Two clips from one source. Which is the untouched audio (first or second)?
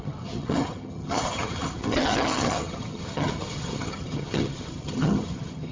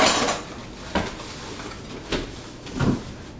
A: second